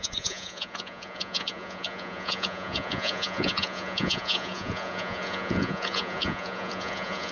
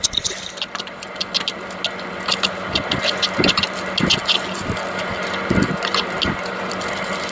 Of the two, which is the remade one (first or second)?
first